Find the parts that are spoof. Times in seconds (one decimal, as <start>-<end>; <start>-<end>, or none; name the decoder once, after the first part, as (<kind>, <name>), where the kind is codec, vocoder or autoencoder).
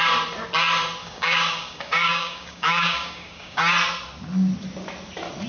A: 1.0-3.6 (codec, DAC)